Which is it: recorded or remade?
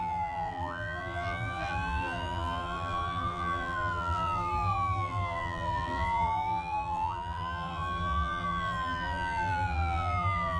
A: remade